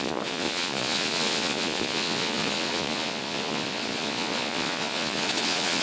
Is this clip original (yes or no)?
no